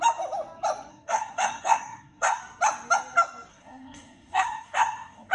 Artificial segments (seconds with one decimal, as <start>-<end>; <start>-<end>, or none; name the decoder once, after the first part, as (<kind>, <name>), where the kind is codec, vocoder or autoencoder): 0.9-2.4 (codec, SNAC); 3.5-5.3